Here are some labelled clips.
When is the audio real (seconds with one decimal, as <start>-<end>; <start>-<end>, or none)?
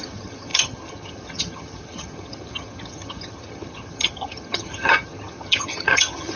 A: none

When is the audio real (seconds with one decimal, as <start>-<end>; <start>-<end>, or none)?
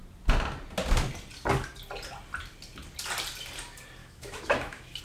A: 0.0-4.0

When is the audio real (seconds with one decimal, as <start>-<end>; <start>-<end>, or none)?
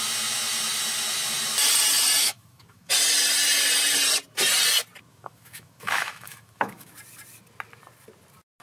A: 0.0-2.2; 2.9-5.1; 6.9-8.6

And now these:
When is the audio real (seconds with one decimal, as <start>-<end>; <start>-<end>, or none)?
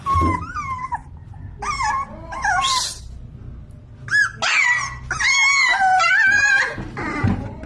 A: 0.0-7.7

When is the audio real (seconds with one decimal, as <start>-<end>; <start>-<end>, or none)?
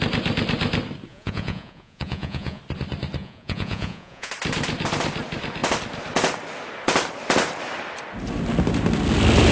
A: 0.0-1.1; 2.6-3.2; 4.3-9.5